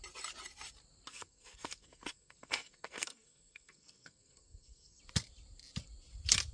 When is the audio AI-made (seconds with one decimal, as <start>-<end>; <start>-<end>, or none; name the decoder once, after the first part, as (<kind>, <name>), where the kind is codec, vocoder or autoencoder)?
1.1-5.0 (codec, SNAC)